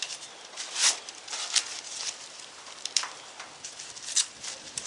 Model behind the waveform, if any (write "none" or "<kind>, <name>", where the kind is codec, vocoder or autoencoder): vocoder, BigVGAN v2